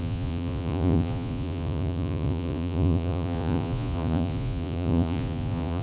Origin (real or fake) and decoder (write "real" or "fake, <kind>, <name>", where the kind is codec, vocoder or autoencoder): fake, vocoder, Vocos